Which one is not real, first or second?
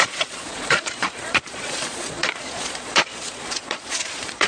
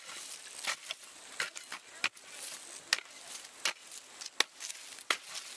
first